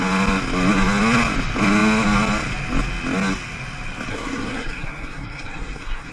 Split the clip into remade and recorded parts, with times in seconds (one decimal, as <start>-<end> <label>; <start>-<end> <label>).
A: 0.0-4.1 recorded; 4.1-6.1 remade